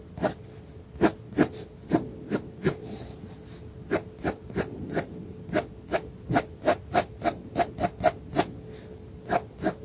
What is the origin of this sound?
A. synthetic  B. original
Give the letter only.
B